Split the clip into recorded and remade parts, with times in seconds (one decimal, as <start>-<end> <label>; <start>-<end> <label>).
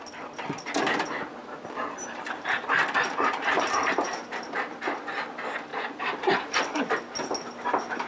0.0-1.4 recorded; 1.4-3.8 remade; 3.8-5.7 recorded; 5.7-6.9 remade; 6.9-8.1 recorded